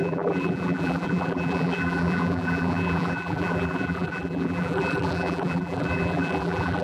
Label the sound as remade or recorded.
remade